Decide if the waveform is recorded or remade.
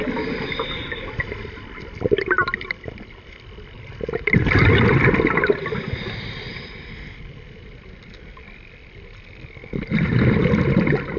recorded